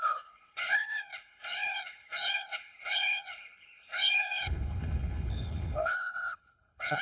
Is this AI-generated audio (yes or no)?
yes